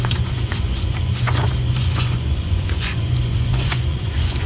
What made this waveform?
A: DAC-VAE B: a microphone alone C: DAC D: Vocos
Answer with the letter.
D